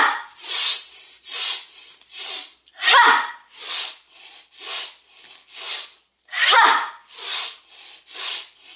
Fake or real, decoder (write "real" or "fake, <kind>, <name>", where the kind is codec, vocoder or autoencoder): real